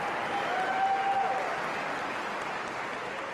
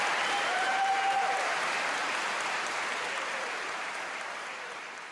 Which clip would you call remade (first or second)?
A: second